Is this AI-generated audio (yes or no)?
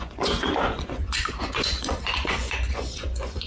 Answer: yes